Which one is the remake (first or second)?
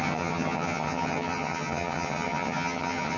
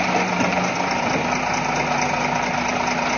first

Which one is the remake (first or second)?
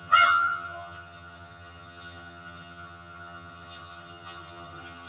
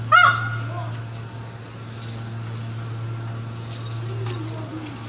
first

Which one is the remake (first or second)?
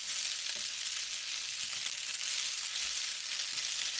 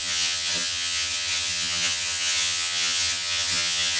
second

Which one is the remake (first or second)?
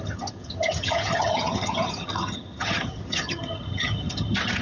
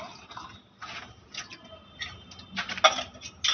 first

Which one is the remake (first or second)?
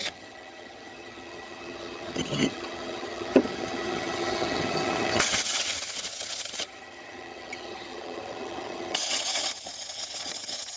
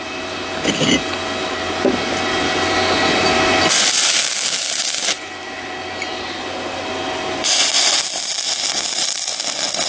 first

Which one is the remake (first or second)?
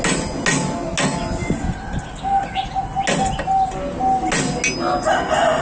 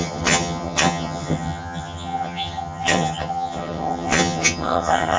second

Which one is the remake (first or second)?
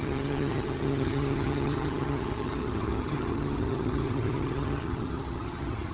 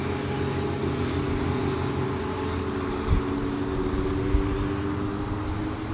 first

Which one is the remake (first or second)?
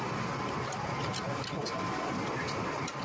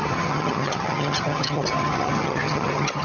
second